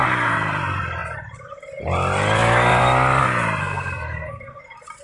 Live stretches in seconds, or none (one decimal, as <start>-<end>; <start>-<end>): 0.0-3.6; 4.6-5.0